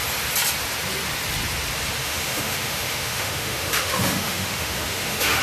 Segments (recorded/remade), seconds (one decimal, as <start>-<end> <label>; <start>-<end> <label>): 0.0-2.0 recorded; 2.0-5.4 remade